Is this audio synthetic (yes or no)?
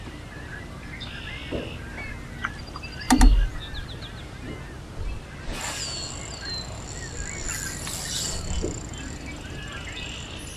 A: no